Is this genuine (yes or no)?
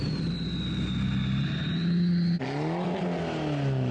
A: yes